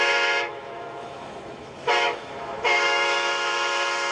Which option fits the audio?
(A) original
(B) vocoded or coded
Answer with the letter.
B